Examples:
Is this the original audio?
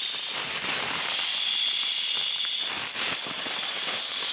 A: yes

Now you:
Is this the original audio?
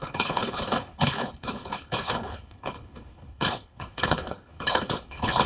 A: no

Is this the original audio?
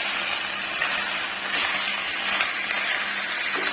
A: yes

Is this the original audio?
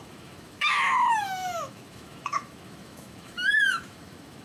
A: no